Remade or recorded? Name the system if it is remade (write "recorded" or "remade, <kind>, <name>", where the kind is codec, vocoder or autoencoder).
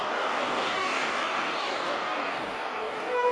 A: remade, codec, DAC